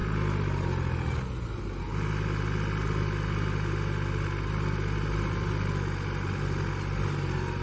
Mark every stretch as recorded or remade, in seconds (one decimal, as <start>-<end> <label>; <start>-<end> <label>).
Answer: 0.0-7.6 recorded